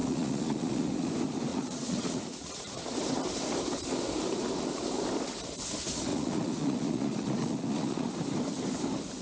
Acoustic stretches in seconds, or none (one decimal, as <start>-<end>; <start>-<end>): 1.1-1.5; 2.8-6.1; 8.1-9.2